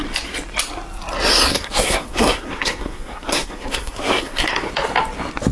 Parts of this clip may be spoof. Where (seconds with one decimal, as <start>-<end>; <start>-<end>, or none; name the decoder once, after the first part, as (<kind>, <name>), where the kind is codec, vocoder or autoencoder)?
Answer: 1.5-4.7 (codec, SNAC)

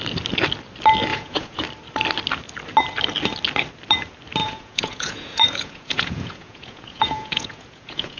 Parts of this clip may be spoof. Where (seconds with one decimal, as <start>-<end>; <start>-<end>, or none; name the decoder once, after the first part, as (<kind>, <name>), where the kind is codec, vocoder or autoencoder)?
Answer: 1.1-1.6 (vocoder, Vocos); 4.4-8.2

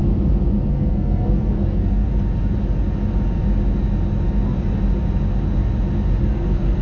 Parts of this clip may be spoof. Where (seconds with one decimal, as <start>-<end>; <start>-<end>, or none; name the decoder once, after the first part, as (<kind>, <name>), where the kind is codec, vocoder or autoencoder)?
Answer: 0.7-2.1 (codec, SNAC); 6.2-6.8

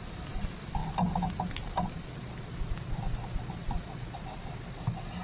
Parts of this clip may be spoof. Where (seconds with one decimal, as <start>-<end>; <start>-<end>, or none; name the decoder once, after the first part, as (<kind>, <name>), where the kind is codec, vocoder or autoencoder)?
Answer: 0.0-0.8 (vocoder, BigVGAN v2); 1.9-5.2

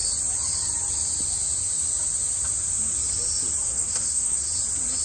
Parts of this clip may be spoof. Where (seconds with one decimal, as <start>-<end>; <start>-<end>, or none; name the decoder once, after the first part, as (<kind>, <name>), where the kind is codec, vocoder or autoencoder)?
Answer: 3.6-4.5 (codec, SNAC)